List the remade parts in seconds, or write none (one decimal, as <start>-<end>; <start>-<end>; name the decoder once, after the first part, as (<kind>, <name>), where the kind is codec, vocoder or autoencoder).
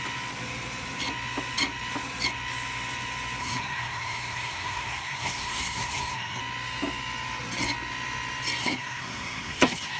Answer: 3.4-6.4 (codec, SNAC); 8.6-10.0